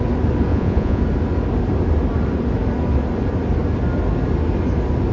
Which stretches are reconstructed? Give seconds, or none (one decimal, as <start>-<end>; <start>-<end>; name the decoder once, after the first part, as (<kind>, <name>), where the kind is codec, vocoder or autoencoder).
0.5-1.0 (vocoder, Vocos)